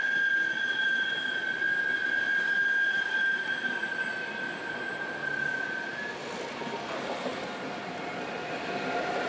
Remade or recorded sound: recorded